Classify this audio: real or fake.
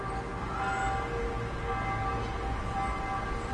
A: real